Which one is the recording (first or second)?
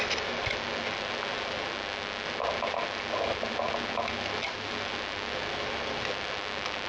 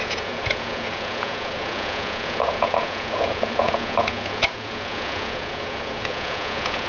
first